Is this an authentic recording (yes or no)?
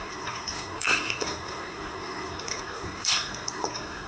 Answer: no